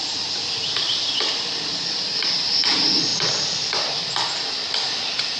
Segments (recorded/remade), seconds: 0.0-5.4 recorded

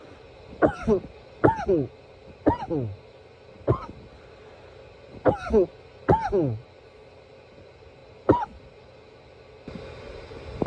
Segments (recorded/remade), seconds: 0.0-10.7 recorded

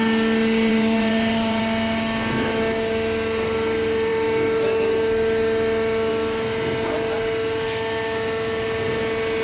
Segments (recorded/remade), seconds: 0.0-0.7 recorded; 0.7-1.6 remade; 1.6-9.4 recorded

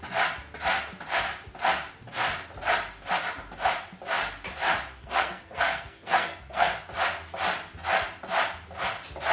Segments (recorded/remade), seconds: 0.0-5.0 recorded; 5.0-6.8 remade; 6.8-9.3 recorded

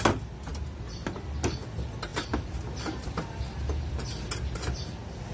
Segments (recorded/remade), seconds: 0.0-5.3 recorded

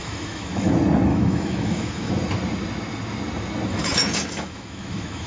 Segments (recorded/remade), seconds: 0.0-0.7 remade; 0.7-1.1 recorded; 1.1-2.1 remade; 2.1-3.7 recorded; 3.7-5.3 remade